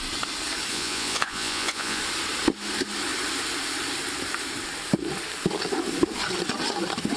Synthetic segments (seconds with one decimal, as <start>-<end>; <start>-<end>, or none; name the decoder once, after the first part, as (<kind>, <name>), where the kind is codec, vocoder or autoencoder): 0.7-2.0 (vocoder, Vocos)